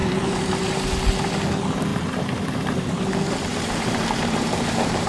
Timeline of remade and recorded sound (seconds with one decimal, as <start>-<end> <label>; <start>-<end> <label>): 0.0-0.9 remade; 0.9-1.9 recorded; 1.9-2.8 remade; 2.8-3.5 recorded; 3.5-5.1 remade